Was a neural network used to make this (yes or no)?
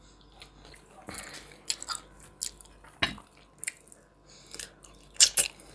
no